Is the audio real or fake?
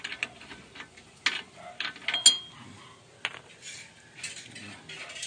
real